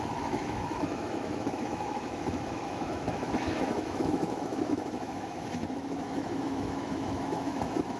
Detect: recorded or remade remade